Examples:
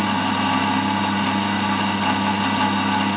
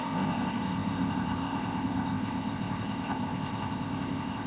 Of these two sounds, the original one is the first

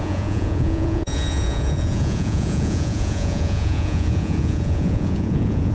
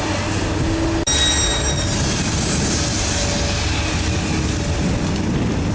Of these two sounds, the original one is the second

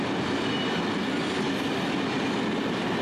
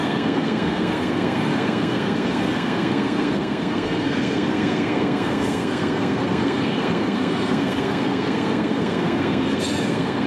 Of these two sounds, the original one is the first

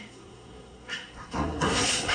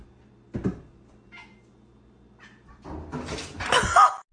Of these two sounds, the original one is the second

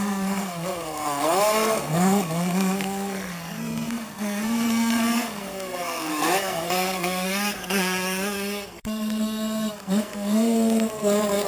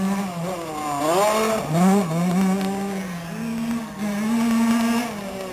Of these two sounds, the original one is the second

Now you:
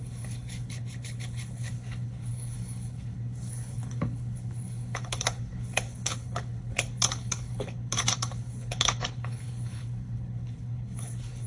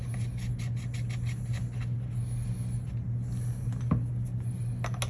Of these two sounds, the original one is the second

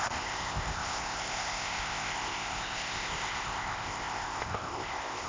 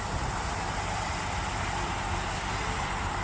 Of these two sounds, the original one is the second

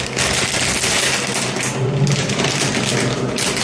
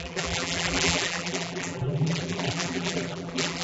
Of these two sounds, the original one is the first